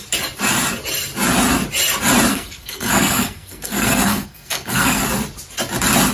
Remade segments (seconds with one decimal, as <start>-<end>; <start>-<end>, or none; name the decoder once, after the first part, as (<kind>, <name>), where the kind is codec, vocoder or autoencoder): 2.3-5.0 (codec, SNAC)